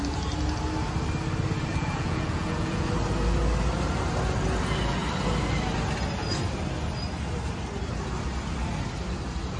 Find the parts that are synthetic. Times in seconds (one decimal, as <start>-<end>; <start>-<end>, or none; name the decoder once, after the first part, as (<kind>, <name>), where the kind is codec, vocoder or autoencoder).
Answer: 1.7-2.9 (vocoder, Vocos)